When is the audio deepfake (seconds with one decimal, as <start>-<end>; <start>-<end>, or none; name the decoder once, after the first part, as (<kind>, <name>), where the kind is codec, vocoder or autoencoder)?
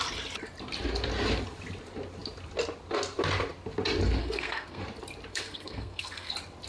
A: 4.2-4.8 (codec, SNAC); 5.3-6.3